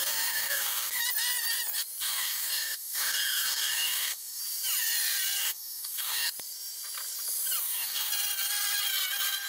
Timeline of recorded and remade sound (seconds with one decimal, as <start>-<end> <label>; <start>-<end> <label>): 0.0-1.0 remade; 1.0-2.0 recorded; 2.0-4.4 remade; 4.4-5.4 recorded; 5.4-6.3 remade; 6.3-7.6 recorded; 7.6-8.1 remade; 8.1-9.5 recorded